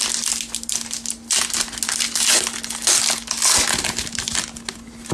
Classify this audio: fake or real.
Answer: real